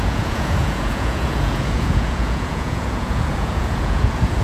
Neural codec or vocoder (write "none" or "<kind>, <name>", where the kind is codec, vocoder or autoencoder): vocoder, Vocos